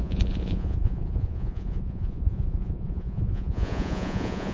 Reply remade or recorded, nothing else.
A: remade